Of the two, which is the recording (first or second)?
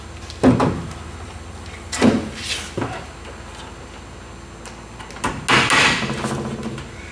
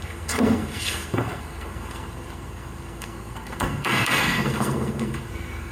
first